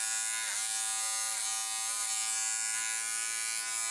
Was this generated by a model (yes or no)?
no